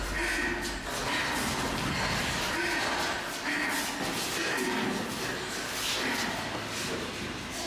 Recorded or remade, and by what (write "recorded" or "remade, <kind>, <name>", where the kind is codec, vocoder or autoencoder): recorded